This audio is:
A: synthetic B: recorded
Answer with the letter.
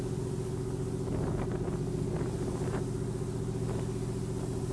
B